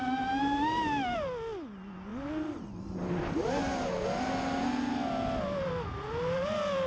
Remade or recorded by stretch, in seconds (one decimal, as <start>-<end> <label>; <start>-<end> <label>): 0.0-6.9 recorded